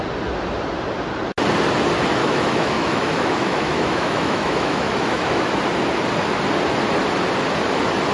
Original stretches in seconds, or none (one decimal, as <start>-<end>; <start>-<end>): 0.0-2.2; 5.5-8.1